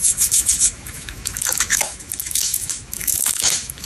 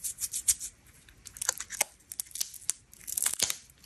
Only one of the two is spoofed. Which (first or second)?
first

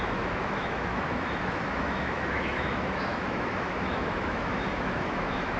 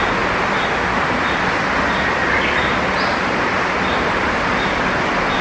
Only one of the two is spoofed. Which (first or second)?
first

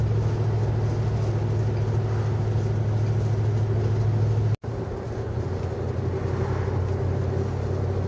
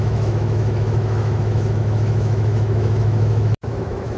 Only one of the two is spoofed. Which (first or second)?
second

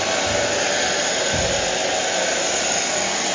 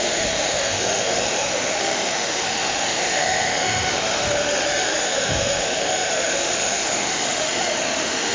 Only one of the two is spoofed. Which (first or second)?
second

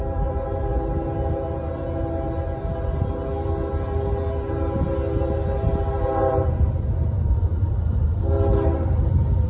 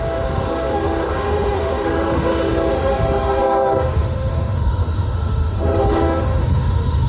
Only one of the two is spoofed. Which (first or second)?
second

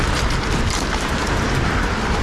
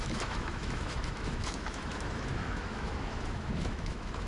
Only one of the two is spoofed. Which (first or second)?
second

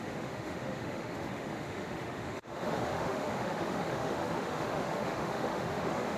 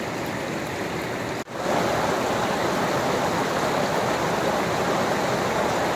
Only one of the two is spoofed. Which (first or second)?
first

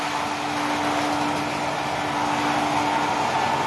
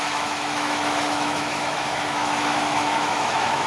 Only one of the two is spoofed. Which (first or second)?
second